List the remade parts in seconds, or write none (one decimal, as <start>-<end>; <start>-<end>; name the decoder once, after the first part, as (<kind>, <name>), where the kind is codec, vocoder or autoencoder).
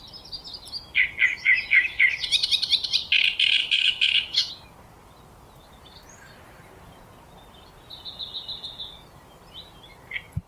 1.3-2.0 (autoencoder, DAC-VAE); 3.6-4.5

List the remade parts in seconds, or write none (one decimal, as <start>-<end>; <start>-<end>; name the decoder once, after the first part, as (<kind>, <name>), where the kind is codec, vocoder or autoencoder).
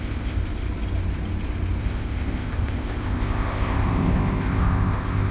0.0-0.4 (codec, ZipCodec); 1.8-5.3